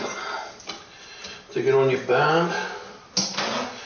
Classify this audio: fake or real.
real